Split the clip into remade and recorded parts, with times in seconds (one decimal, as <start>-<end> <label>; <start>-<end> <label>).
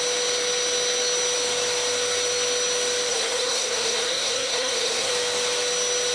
0.0-3.1 recorded; 3.1-5.1 remade; 5.1-6.1 recorded